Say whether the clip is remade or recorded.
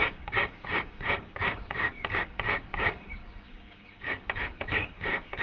remade